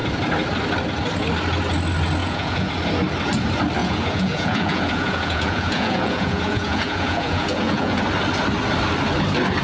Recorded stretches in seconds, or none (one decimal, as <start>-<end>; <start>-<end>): 0.0-2.2; 2.7-3.8; 8.0-9.6